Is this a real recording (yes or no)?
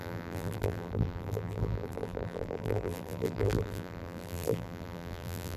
no